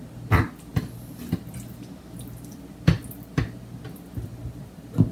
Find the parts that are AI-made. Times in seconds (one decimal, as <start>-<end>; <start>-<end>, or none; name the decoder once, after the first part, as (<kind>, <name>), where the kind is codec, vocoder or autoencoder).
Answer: none